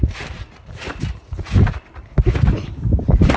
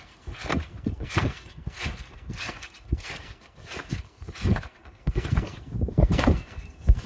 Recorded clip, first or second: first